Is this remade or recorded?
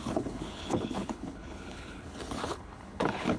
remade